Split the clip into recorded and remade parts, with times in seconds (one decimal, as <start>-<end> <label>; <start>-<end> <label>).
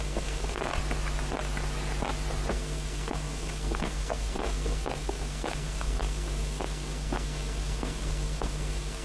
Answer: 0.0-0.7 remade; 0.7-2.5 recorded; 2.5-9.0 remade